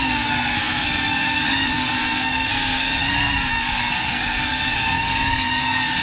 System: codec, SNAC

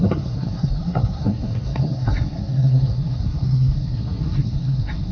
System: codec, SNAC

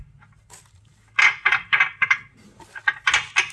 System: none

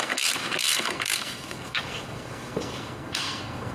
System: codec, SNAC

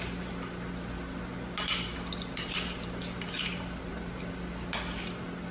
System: none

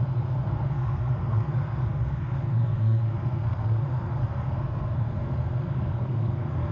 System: codec, SNAC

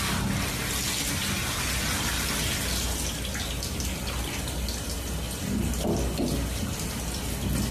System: none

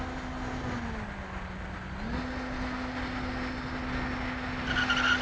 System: none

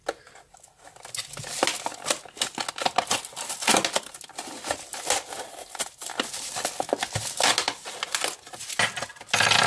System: none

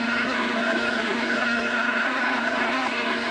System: codec, SNAC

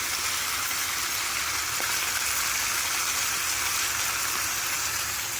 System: none